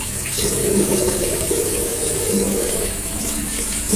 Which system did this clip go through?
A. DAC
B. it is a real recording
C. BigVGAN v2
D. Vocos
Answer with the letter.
A